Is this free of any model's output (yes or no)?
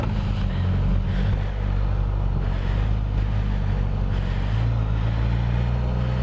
yes